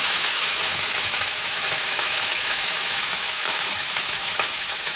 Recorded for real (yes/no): no